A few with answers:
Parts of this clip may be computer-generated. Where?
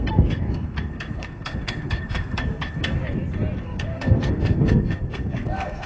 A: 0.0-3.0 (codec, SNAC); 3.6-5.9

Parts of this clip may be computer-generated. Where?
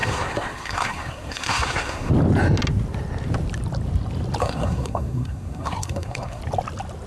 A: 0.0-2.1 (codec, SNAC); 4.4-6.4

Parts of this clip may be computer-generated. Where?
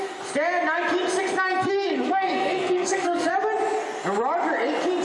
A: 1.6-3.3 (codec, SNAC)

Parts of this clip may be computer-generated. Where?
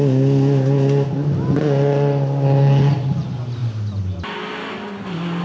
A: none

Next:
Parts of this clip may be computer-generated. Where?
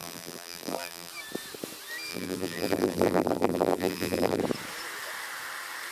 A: 0.0-1.1 (vocoder, BigVGAN v2); 2.1-4.4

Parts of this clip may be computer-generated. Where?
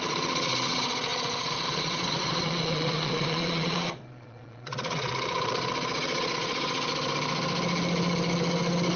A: 0.0-6.9 (vocoder, Vocos)